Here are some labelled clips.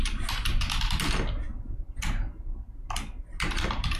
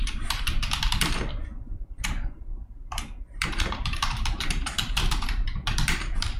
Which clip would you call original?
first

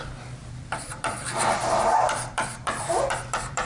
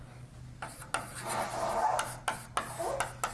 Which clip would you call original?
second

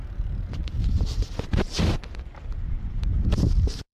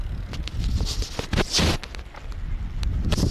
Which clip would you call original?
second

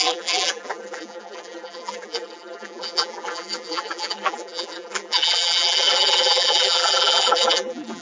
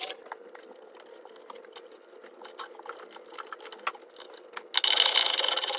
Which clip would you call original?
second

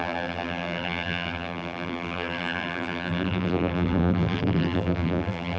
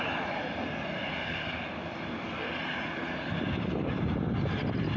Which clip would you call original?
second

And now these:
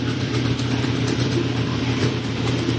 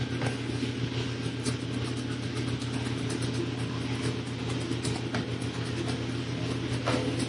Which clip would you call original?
second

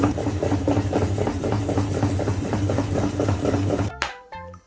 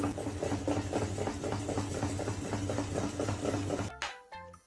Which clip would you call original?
second